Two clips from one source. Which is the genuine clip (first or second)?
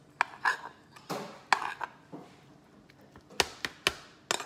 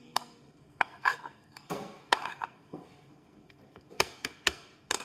first